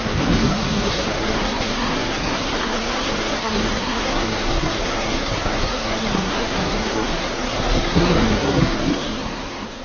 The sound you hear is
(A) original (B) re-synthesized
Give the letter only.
B